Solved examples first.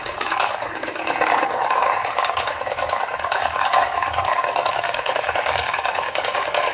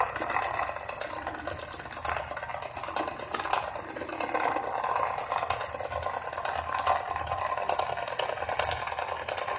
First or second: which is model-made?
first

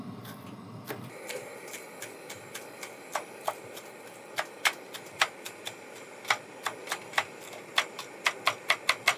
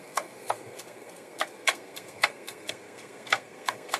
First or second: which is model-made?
second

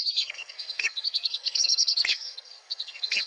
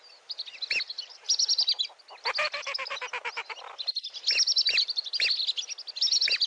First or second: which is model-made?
first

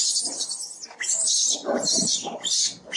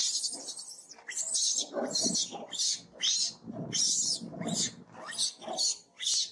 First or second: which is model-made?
first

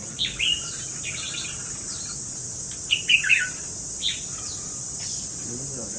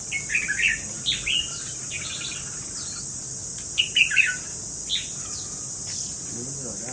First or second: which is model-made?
first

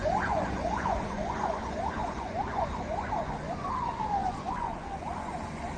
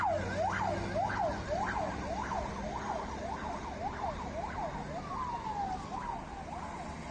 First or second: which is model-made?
first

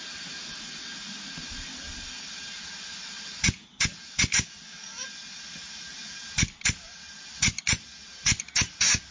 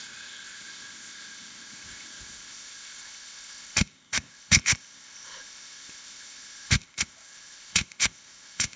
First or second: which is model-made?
second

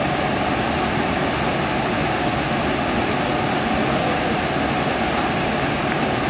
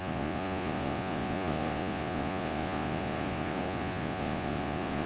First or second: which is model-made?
second